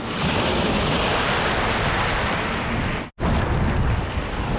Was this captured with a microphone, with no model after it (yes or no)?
yes